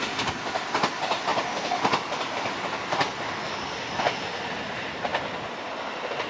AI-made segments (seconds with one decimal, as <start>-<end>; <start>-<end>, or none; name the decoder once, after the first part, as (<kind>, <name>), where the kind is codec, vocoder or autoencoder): none